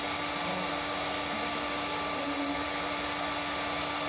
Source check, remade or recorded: recorded